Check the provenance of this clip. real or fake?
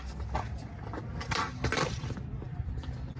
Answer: real